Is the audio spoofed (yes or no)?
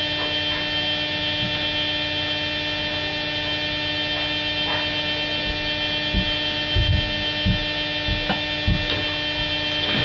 no